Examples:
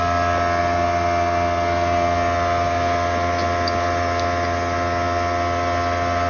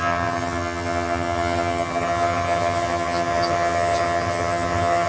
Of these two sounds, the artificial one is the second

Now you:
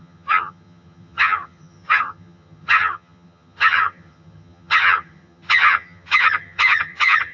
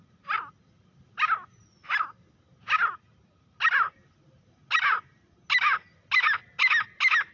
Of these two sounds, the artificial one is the first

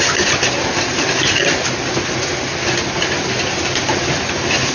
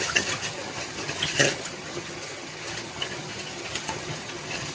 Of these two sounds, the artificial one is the second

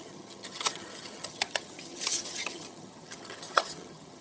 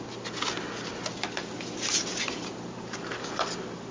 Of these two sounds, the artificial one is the first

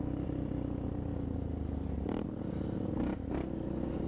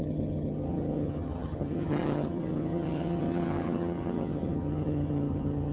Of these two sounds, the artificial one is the second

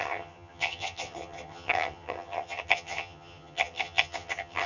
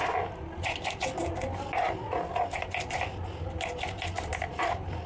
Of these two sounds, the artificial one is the first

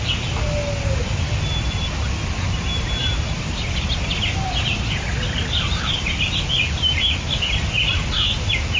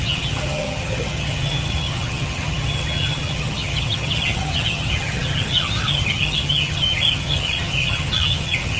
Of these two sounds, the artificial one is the second